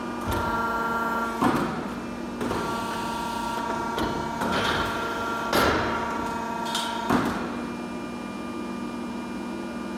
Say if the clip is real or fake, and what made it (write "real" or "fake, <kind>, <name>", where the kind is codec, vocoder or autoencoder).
real